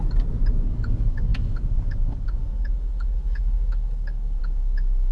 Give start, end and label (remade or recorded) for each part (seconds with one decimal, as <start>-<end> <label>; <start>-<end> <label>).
0.0-0.5 recorded; 0.5-5.1 remade